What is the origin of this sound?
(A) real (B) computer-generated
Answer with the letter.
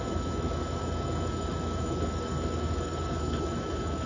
B